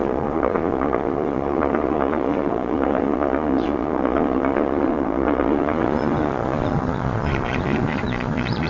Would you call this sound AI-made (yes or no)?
yes